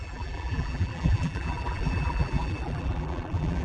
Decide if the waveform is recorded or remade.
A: remade